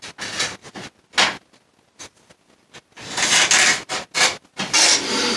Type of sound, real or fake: real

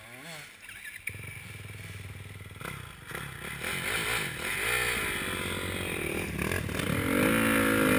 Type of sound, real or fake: real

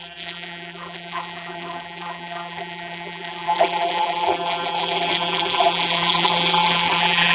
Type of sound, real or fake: fake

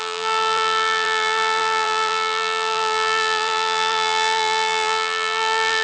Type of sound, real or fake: fake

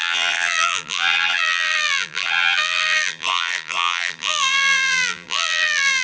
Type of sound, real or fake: fake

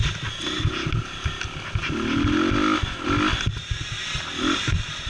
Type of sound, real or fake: real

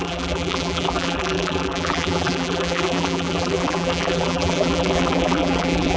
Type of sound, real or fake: fake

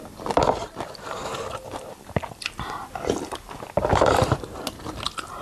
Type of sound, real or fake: real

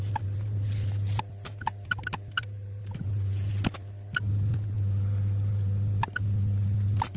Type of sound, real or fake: real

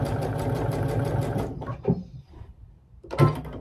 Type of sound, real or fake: fake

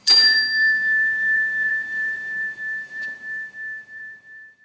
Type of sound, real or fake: fake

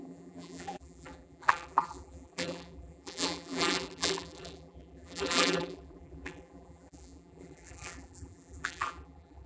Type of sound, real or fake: fake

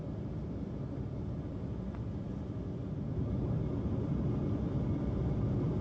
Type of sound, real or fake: real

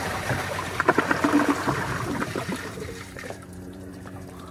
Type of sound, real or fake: fake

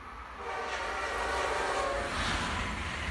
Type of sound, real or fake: real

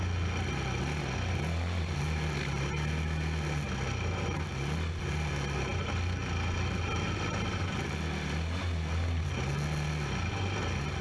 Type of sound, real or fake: real